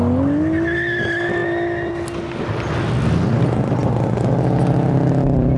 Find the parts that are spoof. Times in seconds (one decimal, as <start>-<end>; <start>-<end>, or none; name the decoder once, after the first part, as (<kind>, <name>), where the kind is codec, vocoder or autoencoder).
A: none